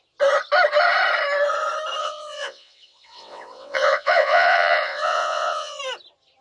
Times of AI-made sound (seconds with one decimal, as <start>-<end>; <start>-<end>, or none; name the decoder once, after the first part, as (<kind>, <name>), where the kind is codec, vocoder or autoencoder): 2.0-5.8 (vocoder, WaveNeXt)

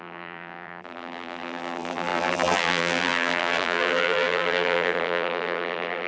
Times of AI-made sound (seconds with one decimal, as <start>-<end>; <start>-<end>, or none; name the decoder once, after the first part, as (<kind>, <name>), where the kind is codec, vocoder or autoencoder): 0.0-6.1 (vocoder, BigVGAN v2)

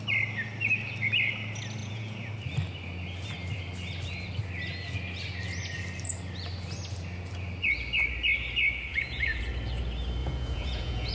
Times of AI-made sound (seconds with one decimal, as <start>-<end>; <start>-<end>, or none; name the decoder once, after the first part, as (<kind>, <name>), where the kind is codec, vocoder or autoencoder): 1.8-2.3 (vocoder, Vocos); 8.9-9.4; 10.2-11.1

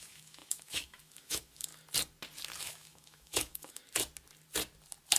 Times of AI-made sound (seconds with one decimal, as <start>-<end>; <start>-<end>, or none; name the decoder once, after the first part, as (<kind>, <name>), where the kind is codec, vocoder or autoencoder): 0.0-1.7 (autoencoder, DAC-VAE); 2.6-3.8

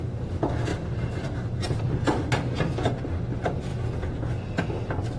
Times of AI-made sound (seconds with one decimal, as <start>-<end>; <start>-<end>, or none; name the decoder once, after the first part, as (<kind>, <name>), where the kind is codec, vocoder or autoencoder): 3.7-4.3 (vocoder, Vocos)

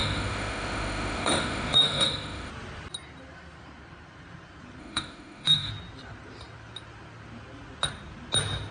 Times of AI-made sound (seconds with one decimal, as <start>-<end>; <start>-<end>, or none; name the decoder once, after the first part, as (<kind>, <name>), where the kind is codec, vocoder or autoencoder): 0.0-2.5 (autoencoder, DAC-VAE); 4.8-5.7

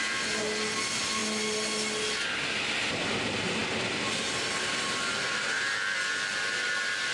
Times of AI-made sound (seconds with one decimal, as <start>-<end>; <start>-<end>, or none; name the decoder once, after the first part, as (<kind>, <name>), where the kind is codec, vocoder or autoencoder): none

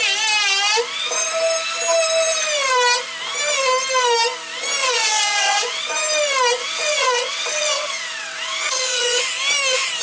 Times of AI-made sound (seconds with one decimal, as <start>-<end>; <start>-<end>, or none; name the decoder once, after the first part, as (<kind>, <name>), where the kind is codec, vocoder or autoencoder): 4.8-5.8 (vocoder, WaveNeXt); 6.6-9.2